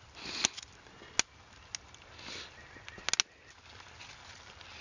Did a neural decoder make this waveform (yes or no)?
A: no